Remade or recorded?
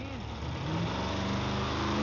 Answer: recorded